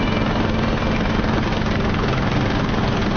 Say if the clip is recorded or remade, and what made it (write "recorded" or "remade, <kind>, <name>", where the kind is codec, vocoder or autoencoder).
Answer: recorded